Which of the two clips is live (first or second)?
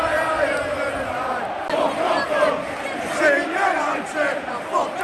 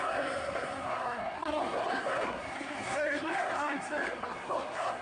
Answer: first